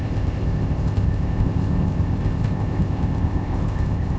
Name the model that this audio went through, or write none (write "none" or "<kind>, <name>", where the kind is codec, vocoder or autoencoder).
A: codec, ZipCodec